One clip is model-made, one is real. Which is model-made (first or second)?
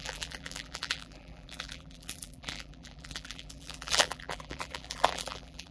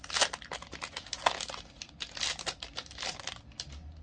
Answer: first